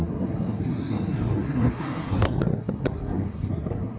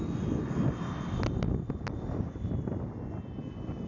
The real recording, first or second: second